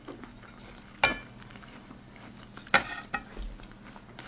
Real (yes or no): yes